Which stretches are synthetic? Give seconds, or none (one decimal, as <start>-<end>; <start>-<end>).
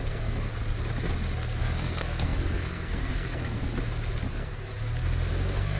0.0-0.5; 1.6-3.6; 4.3-4.7; 5.3-5.8